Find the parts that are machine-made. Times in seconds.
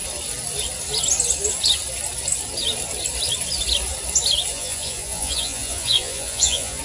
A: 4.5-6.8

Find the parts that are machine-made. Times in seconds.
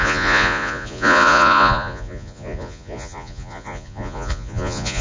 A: 0.0-5.0